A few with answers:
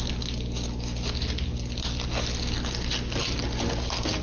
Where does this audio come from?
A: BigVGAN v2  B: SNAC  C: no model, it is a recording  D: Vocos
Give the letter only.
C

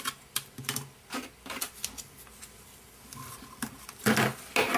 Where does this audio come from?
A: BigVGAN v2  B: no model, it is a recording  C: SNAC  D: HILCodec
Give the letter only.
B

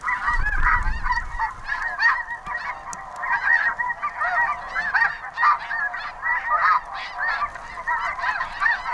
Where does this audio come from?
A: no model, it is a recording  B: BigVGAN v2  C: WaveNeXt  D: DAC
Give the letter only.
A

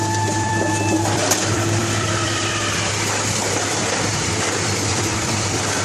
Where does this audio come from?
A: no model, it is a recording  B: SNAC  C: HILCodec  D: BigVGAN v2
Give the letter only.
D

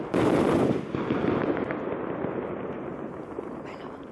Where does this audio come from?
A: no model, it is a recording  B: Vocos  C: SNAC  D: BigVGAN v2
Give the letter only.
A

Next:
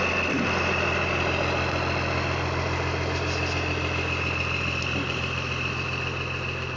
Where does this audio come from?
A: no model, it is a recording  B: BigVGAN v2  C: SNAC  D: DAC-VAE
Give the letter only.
A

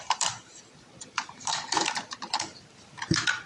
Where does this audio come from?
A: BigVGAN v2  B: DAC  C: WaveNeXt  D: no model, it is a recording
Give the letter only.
A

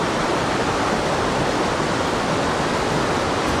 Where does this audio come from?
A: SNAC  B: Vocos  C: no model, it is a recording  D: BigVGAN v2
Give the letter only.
C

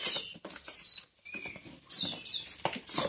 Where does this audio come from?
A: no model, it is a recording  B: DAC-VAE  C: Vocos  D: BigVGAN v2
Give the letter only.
D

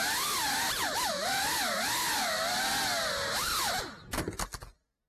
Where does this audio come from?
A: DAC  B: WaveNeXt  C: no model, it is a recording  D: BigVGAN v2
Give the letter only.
C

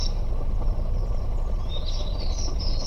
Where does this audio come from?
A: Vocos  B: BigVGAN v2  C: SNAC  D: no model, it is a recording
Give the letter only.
B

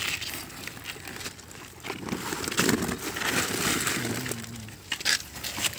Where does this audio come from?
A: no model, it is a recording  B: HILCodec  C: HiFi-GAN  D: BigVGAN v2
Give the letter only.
A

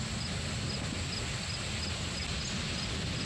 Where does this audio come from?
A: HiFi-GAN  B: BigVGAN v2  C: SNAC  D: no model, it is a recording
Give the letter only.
D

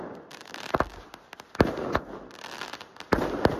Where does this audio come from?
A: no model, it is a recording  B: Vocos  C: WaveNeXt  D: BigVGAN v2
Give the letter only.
A